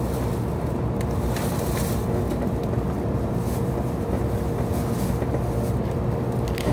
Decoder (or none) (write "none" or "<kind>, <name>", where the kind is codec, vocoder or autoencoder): none